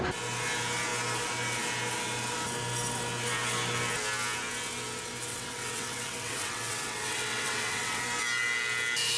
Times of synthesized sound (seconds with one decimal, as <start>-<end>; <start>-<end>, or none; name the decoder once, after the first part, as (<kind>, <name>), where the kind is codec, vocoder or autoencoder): 5.3-8.0 (vocoder, WaveNeXt)

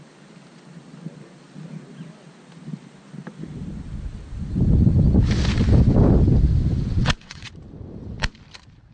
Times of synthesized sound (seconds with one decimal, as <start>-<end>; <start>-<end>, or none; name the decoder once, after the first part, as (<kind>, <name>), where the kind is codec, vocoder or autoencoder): 7.0-7.5 (vocoder, WaveNeXt)